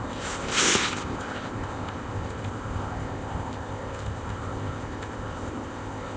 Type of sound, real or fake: fake